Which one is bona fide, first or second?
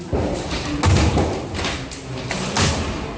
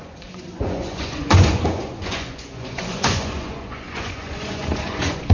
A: first